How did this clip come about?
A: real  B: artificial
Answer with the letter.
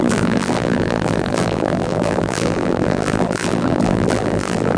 B